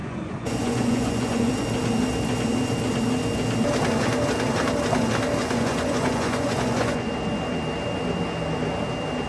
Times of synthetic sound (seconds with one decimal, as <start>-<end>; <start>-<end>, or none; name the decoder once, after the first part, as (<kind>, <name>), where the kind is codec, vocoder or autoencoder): 0.0-1.5 (vocoder, Vocos); 5.4-7.1